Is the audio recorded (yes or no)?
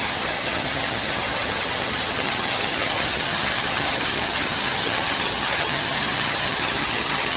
no